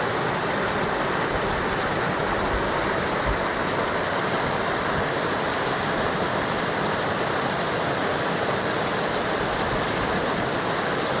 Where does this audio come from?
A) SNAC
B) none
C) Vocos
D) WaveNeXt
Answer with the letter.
B